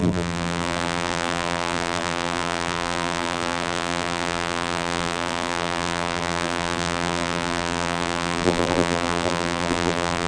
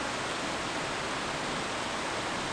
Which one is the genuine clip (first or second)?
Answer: second